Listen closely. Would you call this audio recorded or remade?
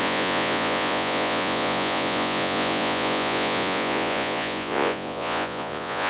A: remade